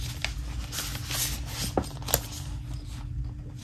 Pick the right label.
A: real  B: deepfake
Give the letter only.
A